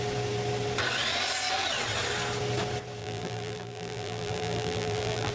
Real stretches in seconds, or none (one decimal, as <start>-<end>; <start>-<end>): 0.0-3.0